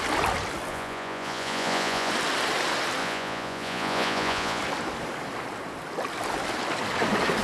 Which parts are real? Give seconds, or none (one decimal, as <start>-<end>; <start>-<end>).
0.0-0.7; 2.1-3.0; 4.6-7.4